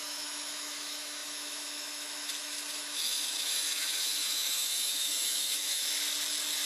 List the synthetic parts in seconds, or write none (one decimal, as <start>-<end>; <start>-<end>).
0.0-5.9